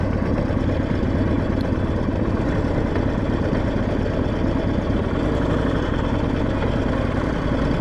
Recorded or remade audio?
recorded